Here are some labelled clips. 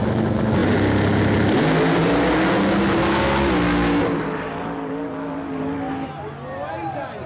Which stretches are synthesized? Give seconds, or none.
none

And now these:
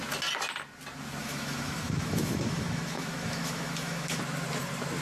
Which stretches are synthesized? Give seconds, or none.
1.2-4.2 (autoencoder, DAC-VAE)

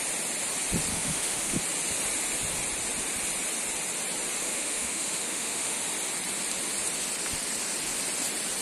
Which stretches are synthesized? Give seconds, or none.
0.9-1.6 (autoencoder, DAC-VAE); 4.4-5.8

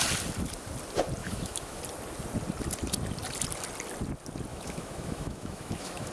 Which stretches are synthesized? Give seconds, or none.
1.2-1.8 (autoencoder, DAC-VAE); 4.5-6.1

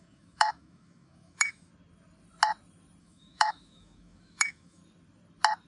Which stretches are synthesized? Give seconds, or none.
0.0-1.7 (autoencoder, DAC-VAE); 3.0-4.8